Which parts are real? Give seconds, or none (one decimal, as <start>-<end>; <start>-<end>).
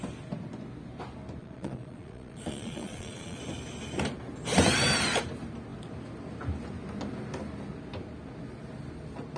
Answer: 0.0-1.4; 3.4-9.4